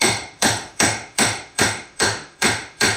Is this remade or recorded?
remade